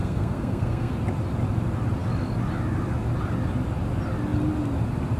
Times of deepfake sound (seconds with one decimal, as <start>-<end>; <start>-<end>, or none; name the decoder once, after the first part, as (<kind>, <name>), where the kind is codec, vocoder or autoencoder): 0.0-0.9 (codec, SNAC)